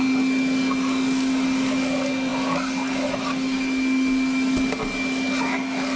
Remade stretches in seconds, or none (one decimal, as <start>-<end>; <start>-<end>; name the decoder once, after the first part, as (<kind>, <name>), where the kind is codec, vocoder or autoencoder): none